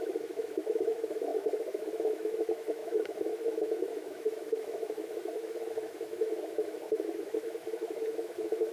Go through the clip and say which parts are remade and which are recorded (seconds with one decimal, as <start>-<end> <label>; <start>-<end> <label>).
0.0-8.7 remade